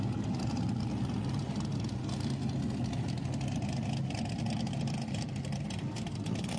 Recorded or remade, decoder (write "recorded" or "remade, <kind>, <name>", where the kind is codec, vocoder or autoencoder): recorded